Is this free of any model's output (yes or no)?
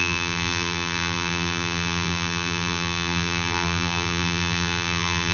no